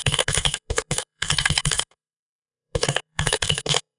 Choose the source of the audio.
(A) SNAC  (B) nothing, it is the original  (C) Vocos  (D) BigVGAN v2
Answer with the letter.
A